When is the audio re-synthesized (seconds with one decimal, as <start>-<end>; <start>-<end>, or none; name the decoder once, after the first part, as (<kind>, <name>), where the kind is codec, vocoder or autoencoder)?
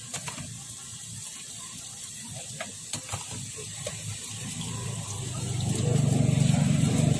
0.9-5.0 (vocoder, BigVGAN v2)